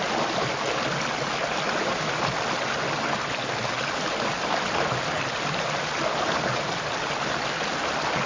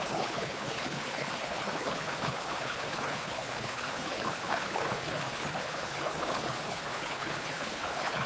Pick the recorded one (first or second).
first